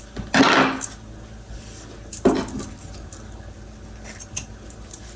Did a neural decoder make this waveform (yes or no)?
no